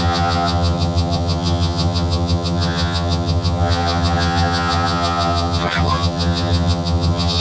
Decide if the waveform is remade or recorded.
remade